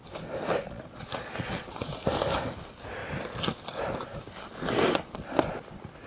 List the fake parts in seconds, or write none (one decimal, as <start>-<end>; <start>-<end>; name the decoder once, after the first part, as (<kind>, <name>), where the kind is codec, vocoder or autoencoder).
0.6-1.9 (vocoder, Vocos)